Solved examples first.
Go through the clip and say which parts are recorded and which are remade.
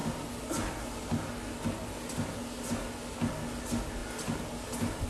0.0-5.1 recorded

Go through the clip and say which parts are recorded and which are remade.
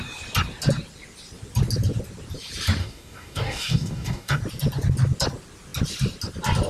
0.0-2.8 recorded; 2.8-4.4 remade; 4.4-6.7 recorded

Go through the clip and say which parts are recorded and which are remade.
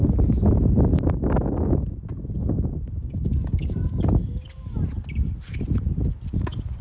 0.0-2.9 recorded; 2.9-4.0 remade; 4.0-6.8 recorded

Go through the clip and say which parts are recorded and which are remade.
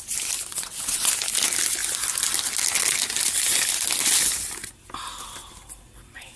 0.0-0.5 recorded; 0.5-1.1 remade; 1.1-6.4 recorded